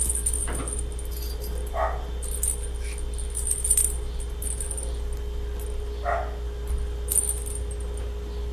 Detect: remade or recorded recorded